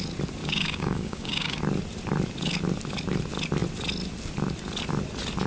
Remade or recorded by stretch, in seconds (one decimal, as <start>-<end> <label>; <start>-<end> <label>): 0.0-0.4 recorded; 0.4-1.6 remade; 1.6-5.5 recorded